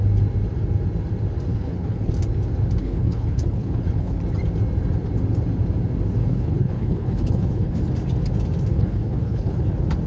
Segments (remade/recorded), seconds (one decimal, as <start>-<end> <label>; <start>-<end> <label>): 0.0-1.5 recorded; 1.5-2.1 remade; 2.1-2.8 recorded; 2.8-4.2 remade; 4.2-6.2 recorded; 6.2-7.8 remade; 7.8-8.7 recorded; 8.7-9.6 remade; 9.6-10.1 recorded